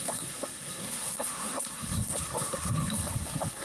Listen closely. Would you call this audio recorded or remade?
remade